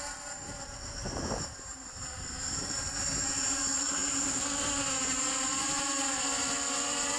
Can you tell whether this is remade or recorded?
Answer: remade